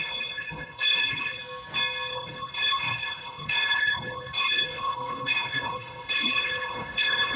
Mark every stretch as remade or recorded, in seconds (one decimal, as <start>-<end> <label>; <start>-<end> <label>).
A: 0.0-1.4 remade; 1.4-2.1 recorded; 2.1-7.4 remade